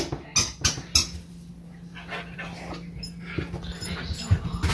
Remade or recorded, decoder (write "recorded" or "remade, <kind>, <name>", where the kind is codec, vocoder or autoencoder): recorded